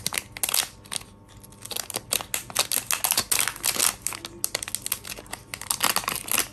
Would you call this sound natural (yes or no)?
yes